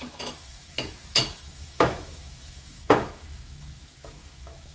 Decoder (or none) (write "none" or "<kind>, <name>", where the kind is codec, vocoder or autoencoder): autoencoder, DAC-VAE